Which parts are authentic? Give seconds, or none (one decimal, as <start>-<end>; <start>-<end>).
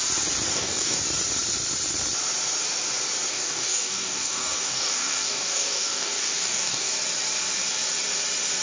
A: 0.0-0.5; 1.0-3.3; 6.9-8.6